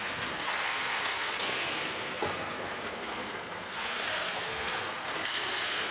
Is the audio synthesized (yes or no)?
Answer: yes